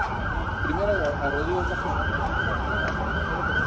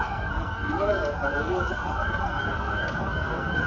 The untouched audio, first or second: first